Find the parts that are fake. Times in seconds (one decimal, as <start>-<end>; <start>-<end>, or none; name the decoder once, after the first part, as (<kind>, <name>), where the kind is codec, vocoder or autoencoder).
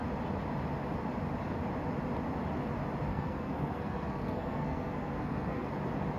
3.1-5.7 (codec, SNAC)